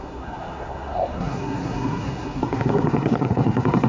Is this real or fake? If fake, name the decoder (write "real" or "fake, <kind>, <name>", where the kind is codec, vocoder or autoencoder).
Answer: fake, codec, SNAC